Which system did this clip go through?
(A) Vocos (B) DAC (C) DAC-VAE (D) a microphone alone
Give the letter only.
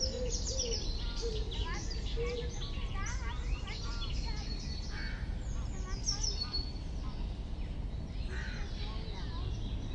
D